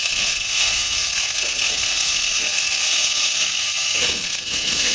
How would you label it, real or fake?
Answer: fake